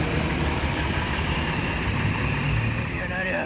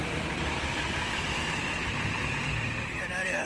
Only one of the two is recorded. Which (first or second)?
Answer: first